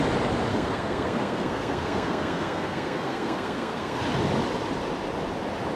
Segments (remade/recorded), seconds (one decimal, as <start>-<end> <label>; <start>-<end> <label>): 0.0-0.5 recorded; 0.5-4.0 remade; 4.0-5.8 recorded